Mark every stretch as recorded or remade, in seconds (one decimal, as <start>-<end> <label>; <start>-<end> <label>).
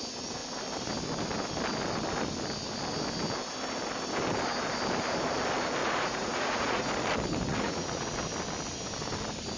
0.0-5.8 recorded; 5.8-6.9 remade; 6.9-7.5 recorded; 7.5-8.1 remade; 8.1-9.6 recorded